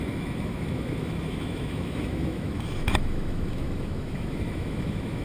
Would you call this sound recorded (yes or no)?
no